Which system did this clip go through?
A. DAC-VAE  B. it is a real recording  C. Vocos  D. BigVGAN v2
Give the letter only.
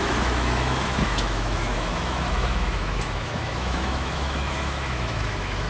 A